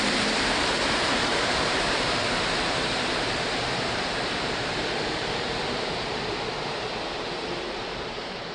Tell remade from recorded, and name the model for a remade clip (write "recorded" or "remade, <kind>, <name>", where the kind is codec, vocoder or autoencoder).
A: remade, vocoder, BigVGAN v2